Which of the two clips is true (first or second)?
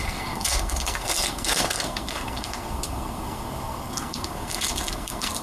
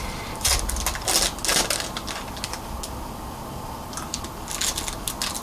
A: second